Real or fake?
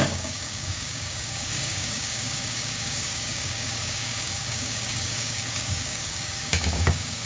fake